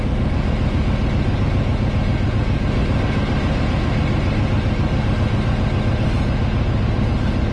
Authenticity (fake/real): real